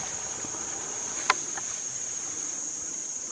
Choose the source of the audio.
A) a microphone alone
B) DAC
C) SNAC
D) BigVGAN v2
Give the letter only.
A